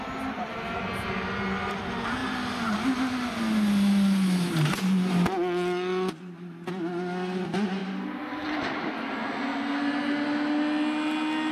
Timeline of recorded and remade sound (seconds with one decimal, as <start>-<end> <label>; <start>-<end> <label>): 0.0-11.5 recorded